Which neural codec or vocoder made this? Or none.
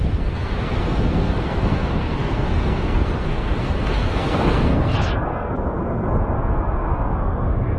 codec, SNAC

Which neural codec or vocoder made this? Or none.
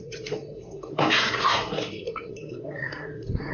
codec, SNAC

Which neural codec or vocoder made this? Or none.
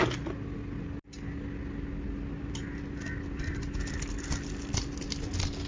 none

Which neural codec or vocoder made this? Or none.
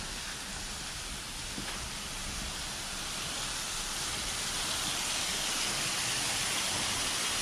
none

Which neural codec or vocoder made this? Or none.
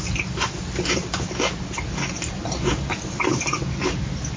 none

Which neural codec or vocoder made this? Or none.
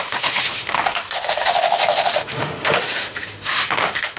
autoencoder, DAC-VAE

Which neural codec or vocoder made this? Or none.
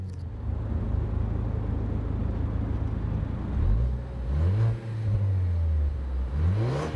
none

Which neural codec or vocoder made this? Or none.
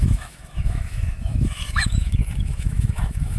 autoencoder, DAC-VAE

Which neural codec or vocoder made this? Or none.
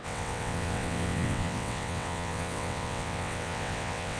vocoder, WaveNeXt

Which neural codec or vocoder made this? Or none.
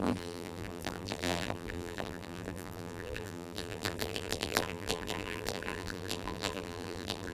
vocoder, BigVGAN v2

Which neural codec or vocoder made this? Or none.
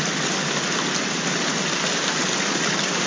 none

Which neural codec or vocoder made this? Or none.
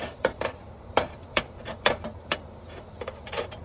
vocoder, BigVGAN v2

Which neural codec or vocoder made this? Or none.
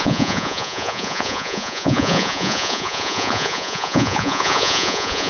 vocoder, Vocos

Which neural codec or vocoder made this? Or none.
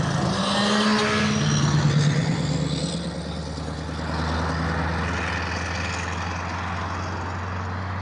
none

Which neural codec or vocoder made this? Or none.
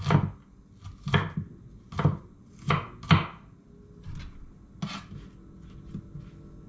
none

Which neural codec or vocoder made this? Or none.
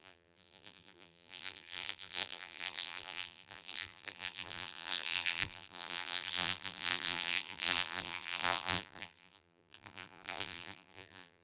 vocoder, BigVGAN v2